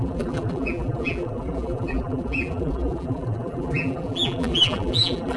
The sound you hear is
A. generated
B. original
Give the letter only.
A